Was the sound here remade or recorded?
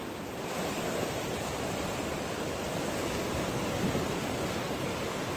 recorded